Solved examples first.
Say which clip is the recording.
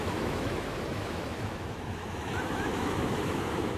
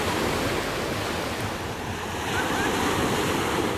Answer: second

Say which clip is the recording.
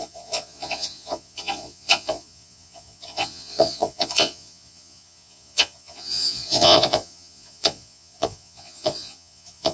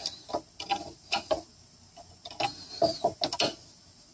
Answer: second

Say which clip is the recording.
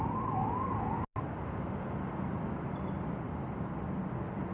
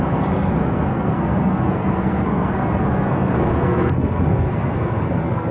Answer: first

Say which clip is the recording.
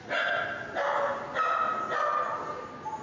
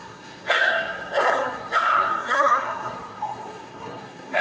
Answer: first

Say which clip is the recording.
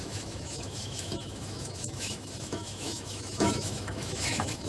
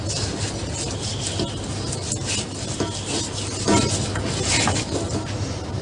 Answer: second